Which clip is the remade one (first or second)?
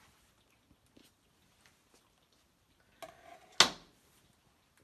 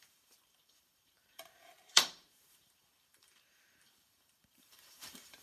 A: second